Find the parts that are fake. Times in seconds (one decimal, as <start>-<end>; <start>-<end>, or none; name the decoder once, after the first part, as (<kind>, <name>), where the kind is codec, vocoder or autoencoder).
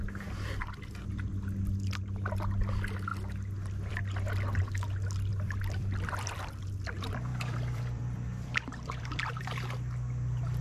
5.3-6.6 (vocoder, BigVGAN v2); 7.3-9.4